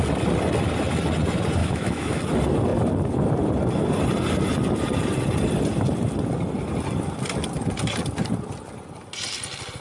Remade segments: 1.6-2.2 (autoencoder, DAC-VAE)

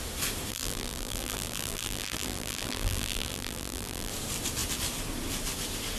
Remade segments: 0.5-4.1 (vocoder, BigVGAN v2)

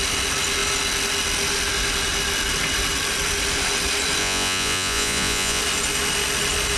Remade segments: 4.2-5.6 (vocoder, Vocos)

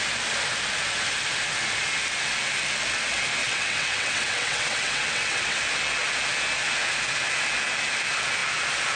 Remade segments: 3.4-5.6 (vocoder, WaveNeXt)